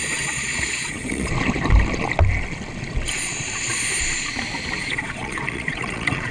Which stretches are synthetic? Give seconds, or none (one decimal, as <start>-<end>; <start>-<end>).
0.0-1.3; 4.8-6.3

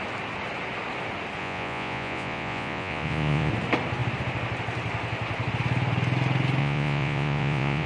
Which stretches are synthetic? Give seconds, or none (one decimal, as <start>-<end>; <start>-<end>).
1.4-3.5; 6.6-7.9

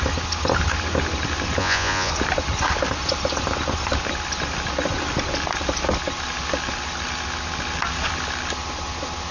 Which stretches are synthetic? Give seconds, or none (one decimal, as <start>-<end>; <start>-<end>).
1.6-2.1